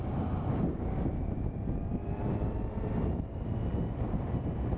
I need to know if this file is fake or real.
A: real